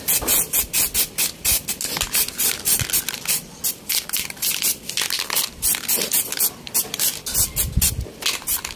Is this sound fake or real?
real